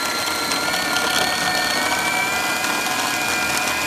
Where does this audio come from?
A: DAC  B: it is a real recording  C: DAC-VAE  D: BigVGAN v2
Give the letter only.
B